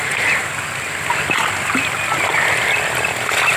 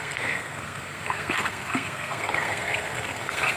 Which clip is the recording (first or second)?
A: first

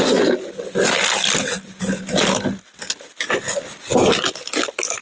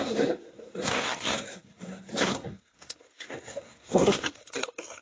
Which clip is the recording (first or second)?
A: first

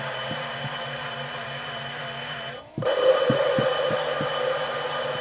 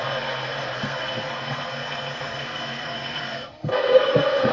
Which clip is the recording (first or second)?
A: first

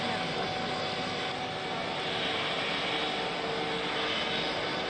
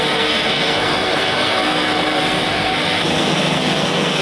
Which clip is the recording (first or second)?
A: first